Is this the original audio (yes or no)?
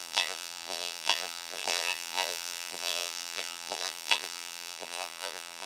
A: no